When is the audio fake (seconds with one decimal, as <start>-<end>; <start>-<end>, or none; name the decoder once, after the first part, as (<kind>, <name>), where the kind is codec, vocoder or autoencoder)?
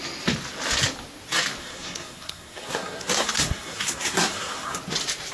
1.6-4.8 (codec, SNAC)